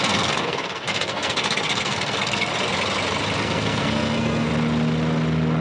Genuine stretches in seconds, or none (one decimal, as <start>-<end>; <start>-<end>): 2.5-3.4; 4.5-5.6